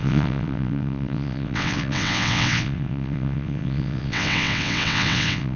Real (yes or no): no